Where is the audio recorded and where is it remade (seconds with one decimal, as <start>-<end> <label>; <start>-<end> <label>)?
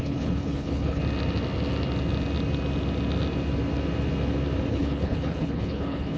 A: 0.0-1.0 remade; 1.0-4.7 recorded; 4.7-6.2 remade